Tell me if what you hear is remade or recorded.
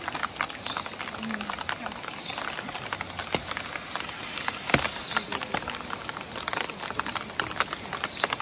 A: recorded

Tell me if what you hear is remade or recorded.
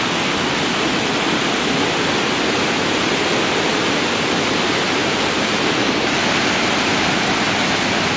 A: recorded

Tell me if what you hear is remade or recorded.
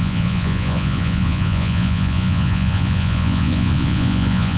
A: remade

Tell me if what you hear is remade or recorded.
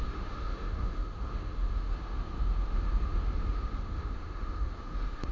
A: remade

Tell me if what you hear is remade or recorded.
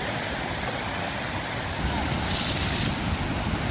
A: recorded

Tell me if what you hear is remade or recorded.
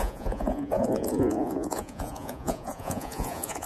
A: remade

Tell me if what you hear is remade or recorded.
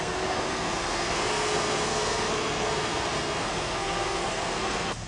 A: remade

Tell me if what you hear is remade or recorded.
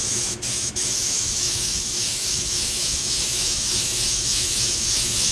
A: remade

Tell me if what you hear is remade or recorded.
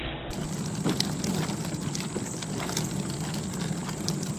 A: recorded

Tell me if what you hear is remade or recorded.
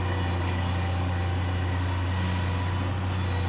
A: recorded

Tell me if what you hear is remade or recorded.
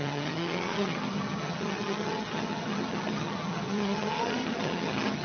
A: remade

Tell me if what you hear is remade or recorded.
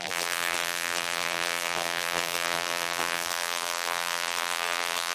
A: remade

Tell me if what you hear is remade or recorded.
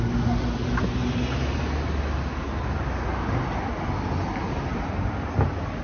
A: recorded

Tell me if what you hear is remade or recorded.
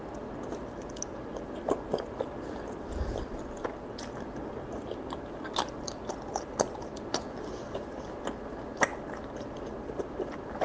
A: recorded